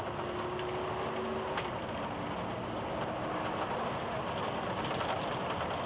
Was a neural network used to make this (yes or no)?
no